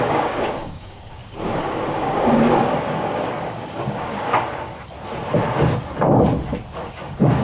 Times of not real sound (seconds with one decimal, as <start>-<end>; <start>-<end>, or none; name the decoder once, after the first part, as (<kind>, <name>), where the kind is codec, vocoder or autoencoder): 0.0-4.7 (codec, DAC); 6.7-7.4